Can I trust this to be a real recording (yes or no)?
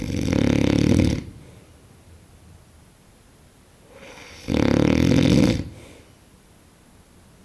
yes